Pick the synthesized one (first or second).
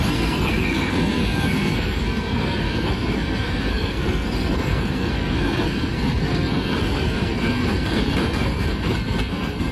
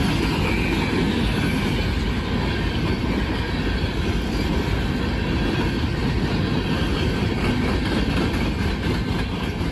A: first